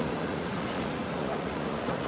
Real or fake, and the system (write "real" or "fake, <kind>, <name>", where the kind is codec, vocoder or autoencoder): fake, vocoder, Vocos